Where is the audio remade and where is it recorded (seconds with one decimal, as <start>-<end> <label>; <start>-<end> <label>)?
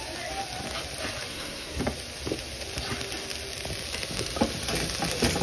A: 0.0-1.3 recorded; 1.3-1.8 remade; 1.8-5.4 recorded